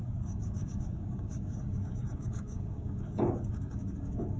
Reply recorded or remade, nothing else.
remade